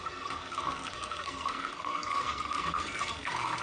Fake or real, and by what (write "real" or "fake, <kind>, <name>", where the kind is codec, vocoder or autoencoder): fake, codec, SNAC